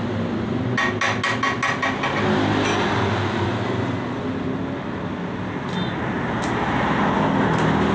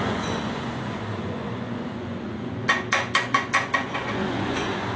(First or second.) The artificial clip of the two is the second